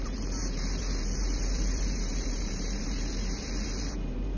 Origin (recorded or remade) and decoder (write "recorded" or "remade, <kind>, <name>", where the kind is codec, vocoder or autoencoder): remade, vocoder, BigVGAN v2